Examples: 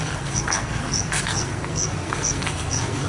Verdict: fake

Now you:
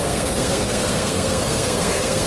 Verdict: fake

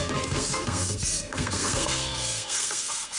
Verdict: fake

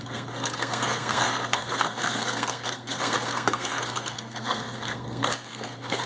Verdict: fake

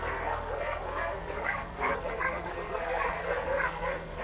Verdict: fake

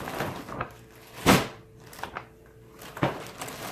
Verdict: real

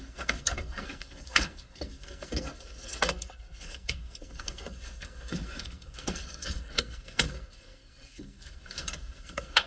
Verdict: fake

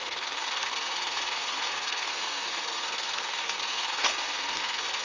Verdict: fake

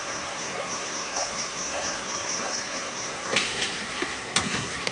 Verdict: fake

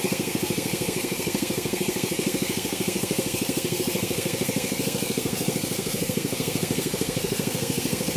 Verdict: fake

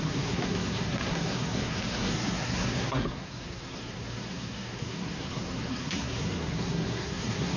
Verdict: fake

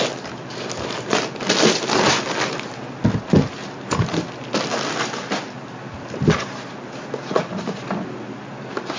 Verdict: real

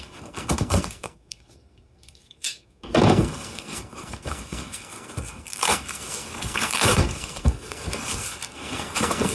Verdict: fake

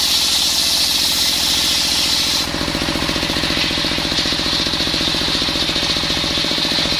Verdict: real